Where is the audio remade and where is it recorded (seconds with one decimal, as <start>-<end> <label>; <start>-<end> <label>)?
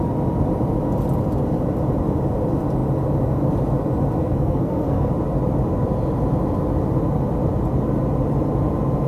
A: 0.0-4.2 recorded; 4.2-5.1 remade; 5.1-9.1 recorded